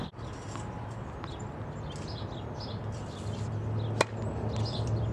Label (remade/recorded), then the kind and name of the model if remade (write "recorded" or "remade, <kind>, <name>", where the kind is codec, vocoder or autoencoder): recorded